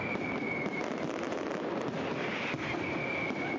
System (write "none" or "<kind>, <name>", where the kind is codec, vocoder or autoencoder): none